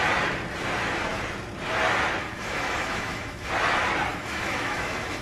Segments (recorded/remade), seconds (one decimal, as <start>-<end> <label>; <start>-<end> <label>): 0.0-2.2 recorded; 2.2-3.5 remade; 3.5-4.1 recorded; 4.1-5.2 remade